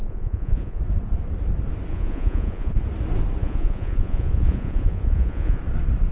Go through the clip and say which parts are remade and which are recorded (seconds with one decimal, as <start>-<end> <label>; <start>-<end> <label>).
0.0-0.8 remade; 0.8-1.9 recorded; 1.9-2.8 remade; 2.8-3.4 recorded; 3.4-5.6 remade; 5.6-6.1 recorded